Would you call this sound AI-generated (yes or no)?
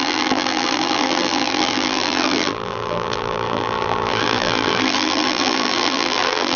yes